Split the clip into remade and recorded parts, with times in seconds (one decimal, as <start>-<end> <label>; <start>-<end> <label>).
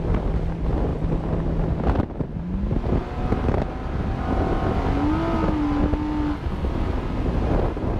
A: 0.0-0.9 recorded; 0.9-1.4 remade; 1.4-8.0 recorded